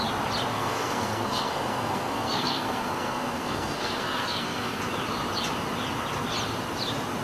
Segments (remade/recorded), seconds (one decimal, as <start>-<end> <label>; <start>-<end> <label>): 0.0-0.5 recorded; 0.5-4.8 remade; 4.8-7.2 recorded